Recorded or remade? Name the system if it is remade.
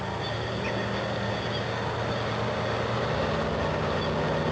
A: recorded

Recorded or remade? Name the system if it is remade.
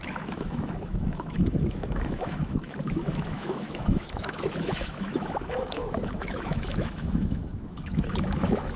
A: remade, autoencoder, DAC-VAE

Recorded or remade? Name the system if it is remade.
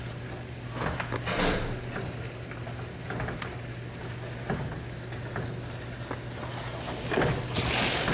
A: recorded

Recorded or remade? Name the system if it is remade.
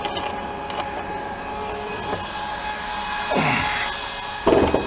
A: recorded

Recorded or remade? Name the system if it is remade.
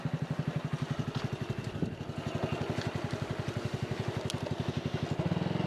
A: recorded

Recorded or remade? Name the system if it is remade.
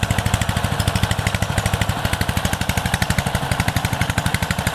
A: recorded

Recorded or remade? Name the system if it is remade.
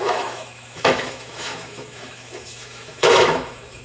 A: remade, autoencoder, DAC-VAE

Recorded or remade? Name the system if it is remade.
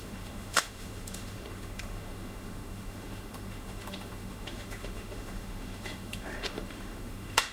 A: remade, autoencoder, DAC-VAE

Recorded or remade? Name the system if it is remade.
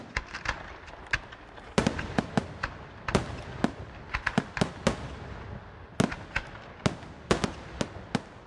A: recorded